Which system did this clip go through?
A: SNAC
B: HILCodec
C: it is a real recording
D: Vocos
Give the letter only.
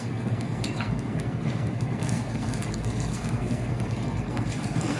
A